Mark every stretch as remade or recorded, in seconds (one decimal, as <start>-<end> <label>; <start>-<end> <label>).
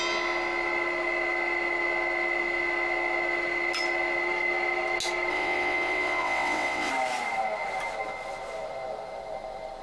0.0-5.3 recorded; 5.3-6.9 remade; 6.9-9.8 recorded